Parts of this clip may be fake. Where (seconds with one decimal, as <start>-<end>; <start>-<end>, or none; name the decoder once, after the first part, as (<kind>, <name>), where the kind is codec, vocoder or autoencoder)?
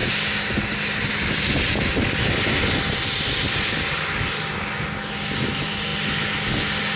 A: none